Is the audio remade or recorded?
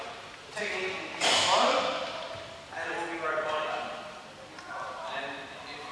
recorded